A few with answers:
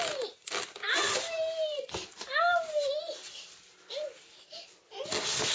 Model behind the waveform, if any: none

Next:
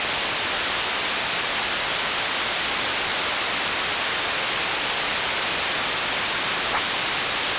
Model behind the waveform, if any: none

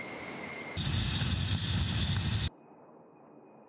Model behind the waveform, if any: none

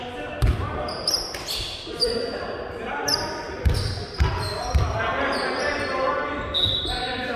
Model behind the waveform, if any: none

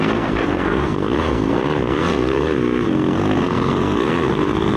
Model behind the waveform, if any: codec, SNAC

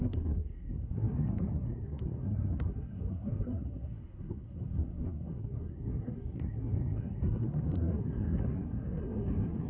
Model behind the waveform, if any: codec, SNAC